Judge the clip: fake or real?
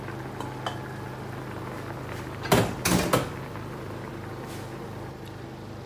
real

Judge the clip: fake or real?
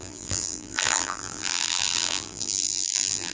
fake